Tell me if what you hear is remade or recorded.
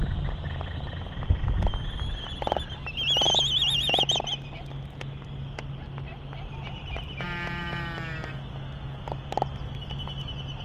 recorded